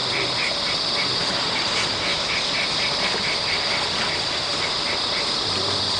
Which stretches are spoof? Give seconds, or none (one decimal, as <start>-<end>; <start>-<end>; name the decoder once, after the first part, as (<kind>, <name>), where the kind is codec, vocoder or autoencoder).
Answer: none